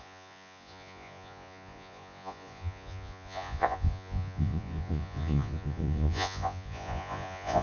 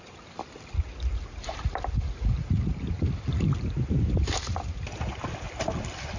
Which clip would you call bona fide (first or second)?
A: second